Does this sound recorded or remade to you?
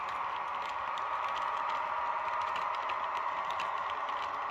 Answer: remade